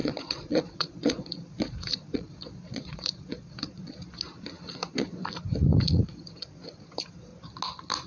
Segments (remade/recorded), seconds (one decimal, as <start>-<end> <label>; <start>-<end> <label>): 0.0-4.0 remade; 4.0-4.7 recorded; 4.7-5.2 remade; 5.2-5.8 recorded; 5.8-7.3 remade; 7.3-8.1 recorded